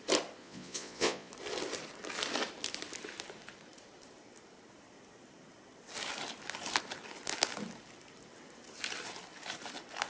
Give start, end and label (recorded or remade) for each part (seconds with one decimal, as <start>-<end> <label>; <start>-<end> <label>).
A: 0.0-0.4 recorded; 0.4-1.3 remade; 1.3-10.1 recorded